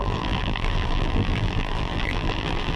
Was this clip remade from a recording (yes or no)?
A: yes